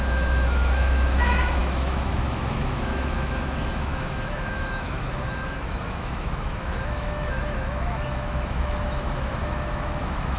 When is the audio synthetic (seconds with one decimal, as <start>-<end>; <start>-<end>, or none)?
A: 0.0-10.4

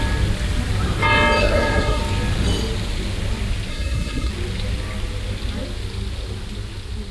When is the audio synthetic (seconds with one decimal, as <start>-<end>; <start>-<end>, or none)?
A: 1.4-2.0; 3.7-4.3

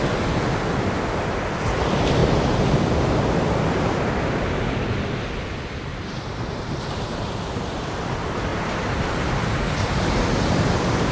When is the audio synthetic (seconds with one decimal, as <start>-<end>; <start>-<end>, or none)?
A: 2.2-4.0; 5.9-6.7; 8.5-11.1

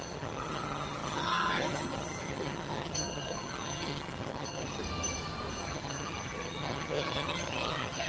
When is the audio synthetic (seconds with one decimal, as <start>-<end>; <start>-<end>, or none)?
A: 0.0-4.8; 5.6-8.1